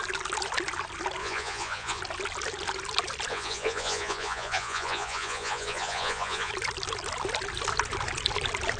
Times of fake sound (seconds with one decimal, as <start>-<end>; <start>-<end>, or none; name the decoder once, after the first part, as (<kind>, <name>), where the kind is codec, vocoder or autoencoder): 1.2-2.0 (vocoder, Vocos); 3.3-6.5